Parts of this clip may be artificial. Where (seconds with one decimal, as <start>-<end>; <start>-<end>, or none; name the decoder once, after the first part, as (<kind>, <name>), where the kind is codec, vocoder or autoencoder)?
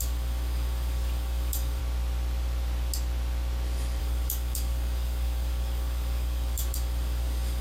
0.0-1.8 (codec, DAC); 4.0-7.6